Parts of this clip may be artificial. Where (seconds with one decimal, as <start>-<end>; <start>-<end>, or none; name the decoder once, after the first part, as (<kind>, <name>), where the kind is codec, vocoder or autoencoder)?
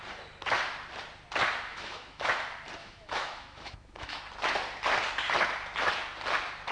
1.7-2.3 (autoencoder, DAC-VAE); 2.8-4.2